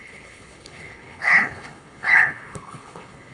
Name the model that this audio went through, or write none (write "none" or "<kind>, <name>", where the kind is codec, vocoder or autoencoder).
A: codec, HILCodec